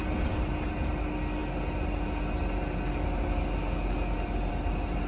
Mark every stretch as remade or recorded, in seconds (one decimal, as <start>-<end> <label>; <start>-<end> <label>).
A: 0.0-5.1 recorded